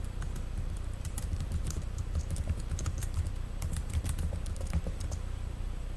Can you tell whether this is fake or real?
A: fake